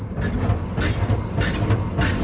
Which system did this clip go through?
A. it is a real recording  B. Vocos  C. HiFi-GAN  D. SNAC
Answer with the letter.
A